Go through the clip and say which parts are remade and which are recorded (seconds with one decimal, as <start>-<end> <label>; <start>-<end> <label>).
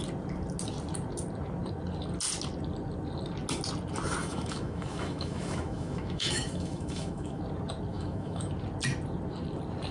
0.0-4.2 recorded; 4.2-7.4 remade; 7.4-7.9 recorded; 7.9-8.5 remade; 8.5-9.9 recorded